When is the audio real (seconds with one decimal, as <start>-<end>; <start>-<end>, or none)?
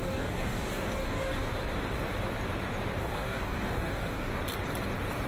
1.5-3.0; 4.4-5.3